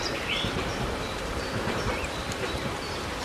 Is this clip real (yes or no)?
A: no